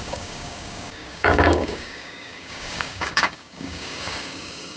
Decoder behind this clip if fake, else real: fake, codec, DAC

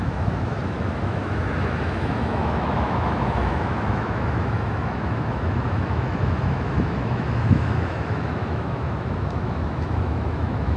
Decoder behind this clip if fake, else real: fake, autoencoder, DAC-VAE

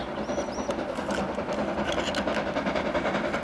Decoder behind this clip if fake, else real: real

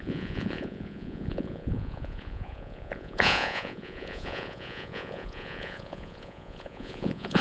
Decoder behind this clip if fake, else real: fake, vocoder, Vocos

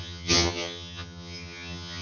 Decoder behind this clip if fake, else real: fake, vocoder, HiFi-GAN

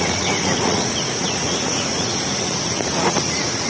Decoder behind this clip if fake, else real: fake, vocoder, Vocos